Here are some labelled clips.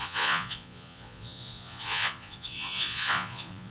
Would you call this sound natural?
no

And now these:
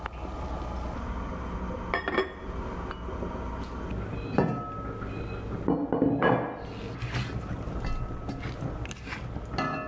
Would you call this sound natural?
yes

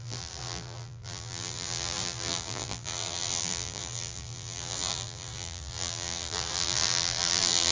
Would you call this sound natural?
no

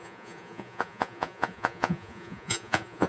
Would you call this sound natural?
no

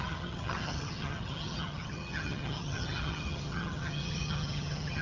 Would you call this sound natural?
no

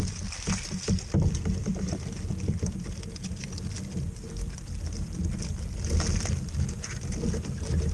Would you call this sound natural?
yes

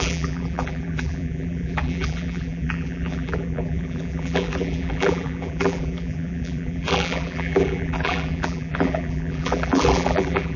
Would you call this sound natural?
no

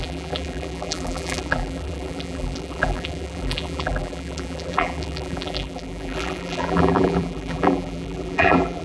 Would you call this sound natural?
no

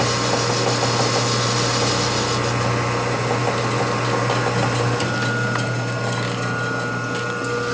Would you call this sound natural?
yes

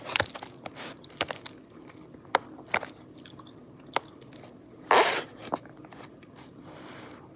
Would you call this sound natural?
yes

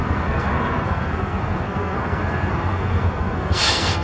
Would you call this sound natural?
no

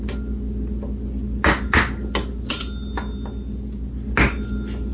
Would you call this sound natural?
yes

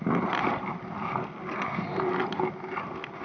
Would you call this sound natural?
yes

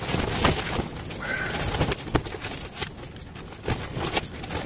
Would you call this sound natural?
yes